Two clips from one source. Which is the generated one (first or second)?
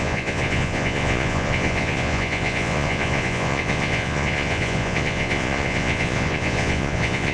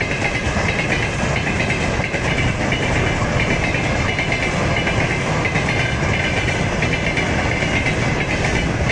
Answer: first